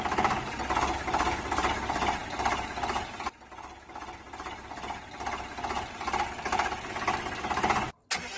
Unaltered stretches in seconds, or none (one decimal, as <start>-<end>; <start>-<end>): 0.0-8.4